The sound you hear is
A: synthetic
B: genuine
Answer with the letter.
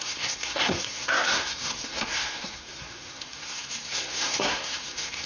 A